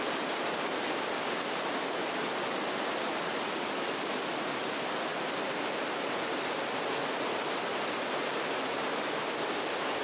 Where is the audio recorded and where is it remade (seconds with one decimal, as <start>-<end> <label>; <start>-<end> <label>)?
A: 0.0-10.0 recorded

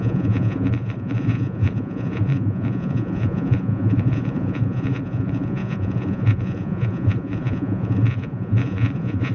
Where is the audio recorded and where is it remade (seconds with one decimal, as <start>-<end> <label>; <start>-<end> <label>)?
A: 0.0-9.3 remade

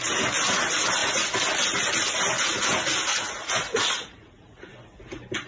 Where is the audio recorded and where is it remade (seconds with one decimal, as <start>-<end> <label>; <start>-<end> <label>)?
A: 0.0-3.1 recorded; 3.1-4.7 remade; 4.7-5.5 recorded

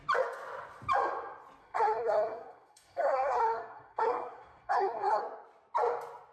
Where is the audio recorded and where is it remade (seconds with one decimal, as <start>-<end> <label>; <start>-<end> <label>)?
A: 0.0-1.6 recorded; 1.6-5.2 remade; 5.2-6.3 recorded

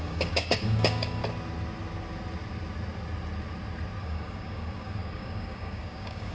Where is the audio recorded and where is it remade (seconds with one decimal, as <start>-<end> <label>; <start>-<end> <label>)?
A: 0.0-1.2 remade; 1.2-4.0 recorded; 4.0-6.3 remade

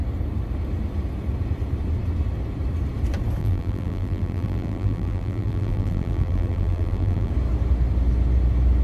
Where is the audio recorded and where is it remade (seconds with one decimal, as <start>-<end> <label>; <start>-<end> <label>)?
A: 0.0-3.4 recorded; 3.4-7.3 remade; 7.3-8.8 recorded

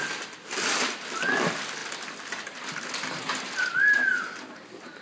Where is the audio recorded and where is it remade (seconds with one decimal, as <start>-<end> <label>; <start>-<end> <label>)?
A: 0.0-1.8 remade; 1.8-3.7 recorded; 3.7-5.0 remade

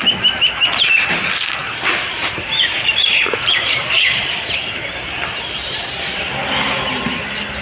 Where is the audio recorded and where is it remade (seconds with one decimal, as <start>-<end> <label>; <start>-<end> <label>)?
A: 0.0-1.6 recorded; 1.6-6.2 remade; 6.2-7.6 recorded